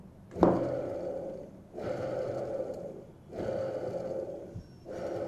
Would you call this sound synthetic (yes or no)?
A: no